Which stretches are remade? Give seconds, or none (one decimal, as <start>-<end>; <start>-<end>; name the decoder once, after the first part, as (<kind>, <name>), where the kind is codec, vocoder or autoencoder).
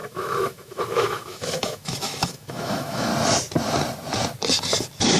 0.0-3.1 (autoencoder, DAC-VAE)